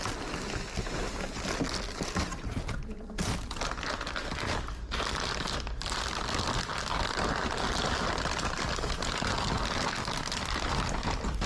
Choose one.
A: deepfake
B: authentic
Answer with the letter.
B